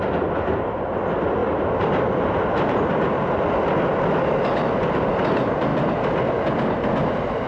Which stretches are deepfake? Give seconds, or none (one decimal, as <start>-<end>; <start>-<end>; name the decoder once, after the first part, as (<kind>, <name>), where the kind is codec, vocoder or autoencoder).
none